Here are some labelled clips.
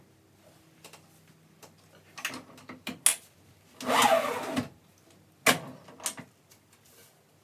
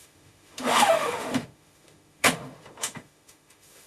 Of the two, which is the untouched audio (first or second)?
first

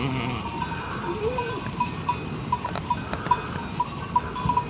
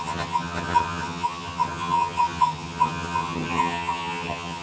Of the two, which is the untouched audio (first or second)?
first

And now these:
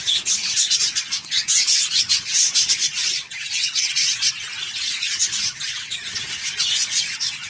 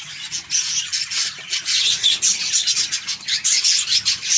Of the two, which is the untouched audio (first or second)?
second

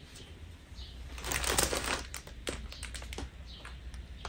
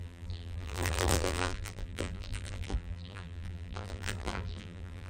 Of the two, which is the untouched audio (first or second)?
first